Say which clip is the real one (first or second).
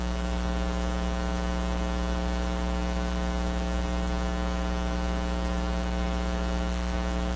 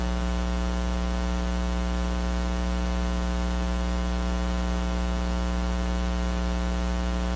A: second